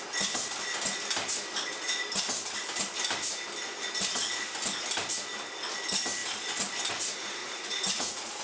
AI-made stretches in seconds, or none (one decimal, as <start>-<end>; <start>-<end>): 7.4-8.4